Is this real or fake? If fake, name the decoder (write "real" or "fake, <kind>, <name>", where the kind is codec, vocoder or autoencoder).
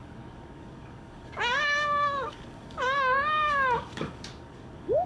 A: fake, codec, DAC